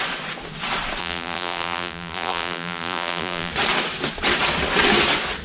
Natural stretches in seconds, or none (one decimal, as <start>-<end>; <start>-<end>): 0.0-1.0; 3.5-5.4